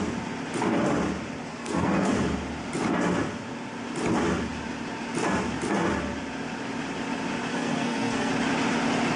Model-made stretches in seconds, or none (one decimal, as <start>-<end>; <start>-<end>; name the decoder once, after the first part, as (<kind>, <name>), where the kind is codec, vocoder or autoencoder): 1.5-2.1 (codec, SNAC); 7.5-8.3